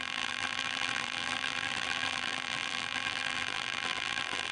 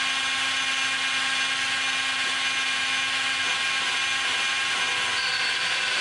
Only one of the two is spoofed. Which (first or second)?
first